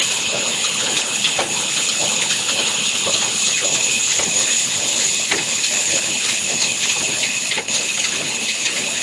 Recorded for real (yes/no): no